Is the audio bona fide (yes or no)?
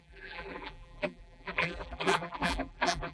no